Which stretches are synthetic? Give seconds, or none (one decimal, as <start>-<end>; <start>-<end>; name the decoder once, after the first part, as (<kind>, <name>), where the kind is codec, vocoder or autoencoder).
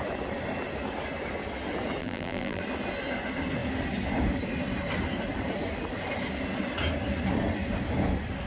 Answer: 2.0-2.6 (vocoder, BigVGAN v2)